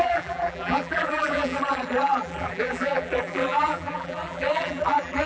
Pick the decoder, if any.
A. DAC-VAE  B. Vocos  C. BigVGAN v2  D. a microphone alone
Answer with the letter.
C